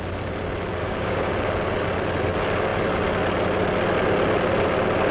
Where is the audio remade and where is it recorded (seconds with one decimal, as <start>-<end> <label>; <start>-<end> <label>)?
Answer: 0.0-0.8 recorded; 0.8-1.3 remade; 1.3-5.1 recorded